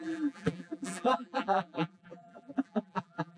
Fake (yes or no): yes